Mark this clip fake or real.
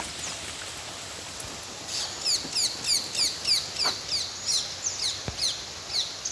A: real